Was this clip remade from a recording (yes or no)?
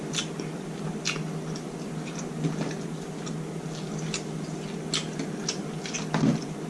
no